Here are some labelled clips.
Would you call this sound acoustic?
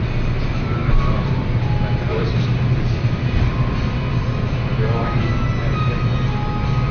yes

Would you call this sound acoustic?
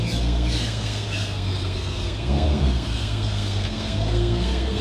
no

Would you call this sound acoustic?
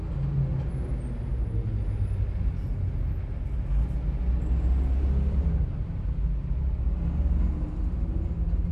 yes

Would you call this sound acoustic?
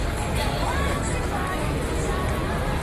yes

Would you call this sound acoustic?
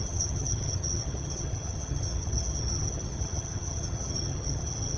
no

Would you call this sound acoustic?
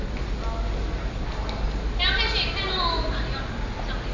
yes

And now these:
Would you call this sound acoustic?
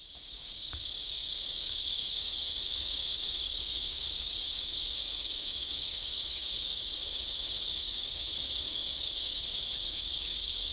no